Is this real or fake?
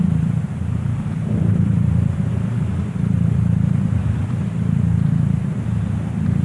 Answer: fake